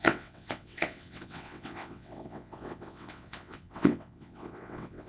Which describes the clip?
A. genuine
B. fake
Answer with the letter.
B